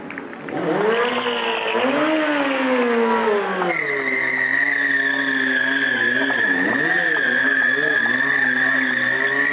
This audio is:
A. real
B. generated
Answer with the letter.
A